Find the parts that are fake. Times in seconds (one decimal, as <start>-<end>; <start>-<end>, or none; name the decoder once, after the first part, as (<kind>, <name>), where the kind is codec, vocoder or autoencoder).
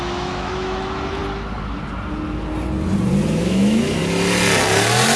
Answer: 0.0-1.2 (autoencoder, DAC-VAE); 3.4-4.0